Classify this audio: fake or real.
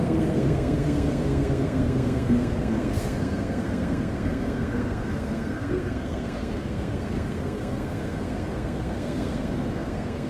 fake